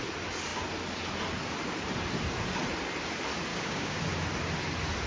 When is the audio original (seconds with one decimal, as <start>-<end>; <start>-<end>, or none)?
0.0-3.5; 4.0-5.1